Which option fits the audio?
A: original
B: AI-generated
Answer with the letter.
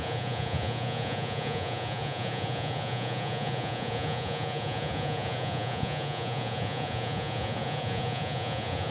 B